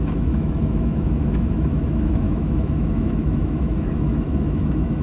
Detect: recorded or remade remade